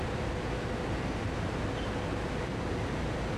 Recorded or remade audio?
recorded